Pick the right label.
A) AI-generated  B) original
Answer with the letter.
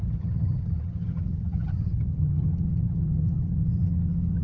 A